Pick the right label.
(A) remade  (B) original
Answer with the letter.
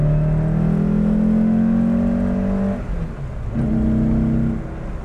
B